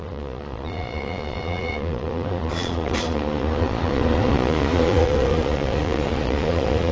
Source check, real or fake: fake